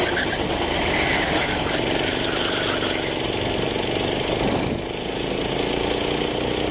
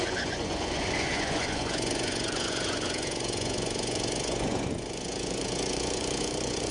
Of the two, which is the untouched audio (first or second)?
first